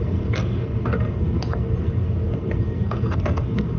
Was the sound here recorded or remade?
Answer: remade